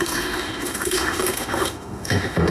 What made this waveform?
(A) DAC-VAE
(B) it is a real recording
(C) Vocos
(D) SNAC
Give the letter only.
A